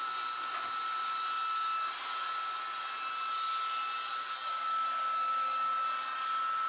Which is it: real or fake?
real